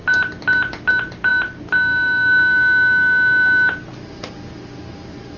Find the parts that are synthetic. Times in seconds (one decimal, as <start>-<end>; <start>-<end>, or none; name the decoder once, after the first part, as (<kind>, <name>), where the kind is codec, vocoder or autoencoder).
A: none